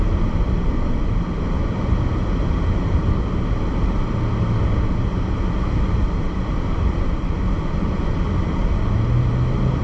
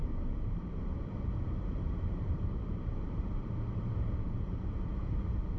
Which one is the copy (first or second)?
second